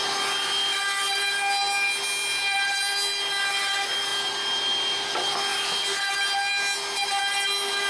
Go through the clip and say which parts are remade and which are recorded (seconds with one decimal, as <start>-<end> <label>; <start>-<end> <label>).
0.0-7.9 recorded